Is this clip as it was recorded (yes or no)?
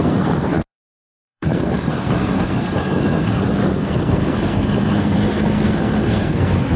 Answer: no